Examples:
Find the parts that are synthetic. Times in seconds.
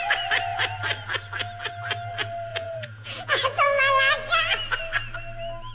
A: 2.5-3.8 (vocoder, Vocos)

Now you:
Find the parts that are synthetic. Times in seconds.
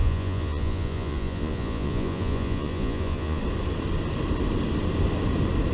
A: 0.0-3.4 (vocoder, Vocos)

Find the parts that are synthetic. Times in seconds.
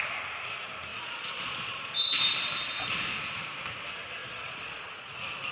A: 0.9-2.2 (vocoder, Vocos); 4.2-5.1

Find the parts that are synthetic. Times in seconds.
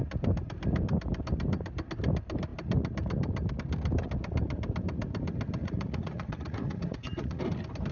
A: 5.6-7.4 (vocoder, Vocos)